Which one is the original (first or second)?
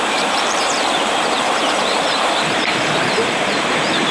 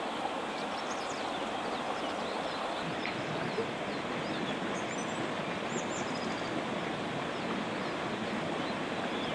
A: second